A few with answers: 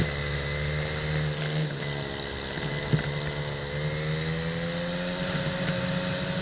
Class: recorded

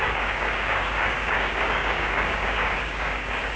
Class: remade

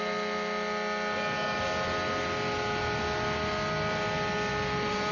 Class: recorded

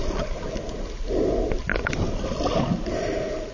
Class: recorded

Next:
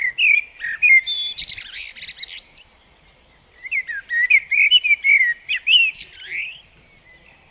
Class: recorded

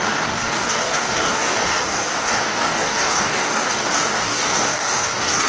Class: remade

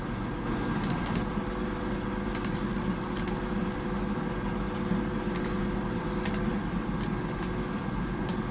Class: recorded